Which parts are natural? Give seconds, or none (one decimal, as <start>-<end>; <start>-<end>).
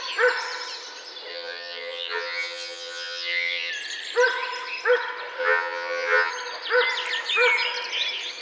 0.0-1.3; 3.7-5.4; 6.3-8.4